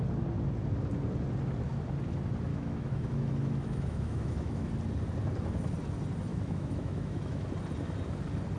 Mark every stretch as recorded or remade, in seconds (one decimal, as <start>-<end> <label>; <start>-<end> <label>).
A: 0.0-2.5 recorded; 2.5-4.7 remade; 4.7-6.3 recorded; 6.3-7.5 remade; 7.5-8.6 recorded